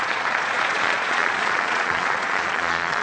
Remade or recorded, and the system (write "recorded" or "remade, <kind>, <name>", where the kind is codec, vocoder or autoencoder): remade, vocoder, Vocos